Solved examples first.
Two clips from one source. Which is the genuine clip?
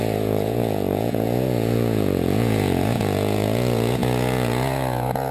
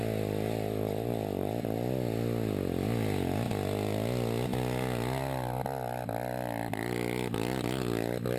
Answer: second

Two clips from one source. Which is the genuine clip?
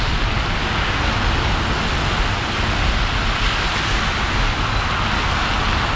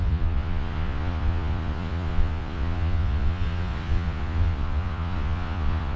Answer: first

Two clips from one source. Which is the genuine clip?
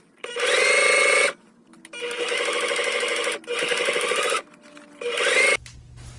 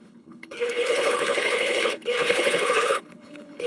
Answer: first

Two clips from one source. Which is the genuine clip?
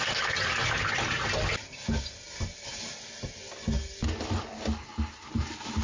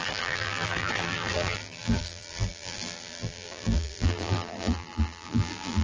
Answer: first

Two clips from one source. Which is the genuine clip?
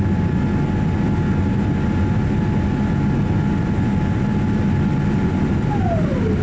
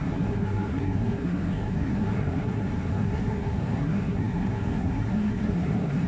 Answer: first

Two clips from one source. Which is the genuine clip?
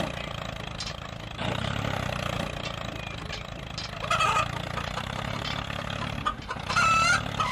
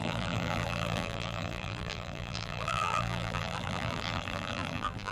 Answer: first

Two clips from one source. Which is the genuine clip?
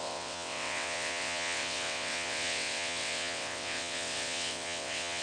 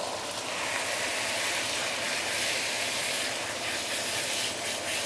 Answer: second